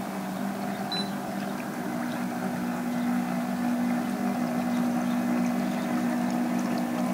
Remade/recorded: recorded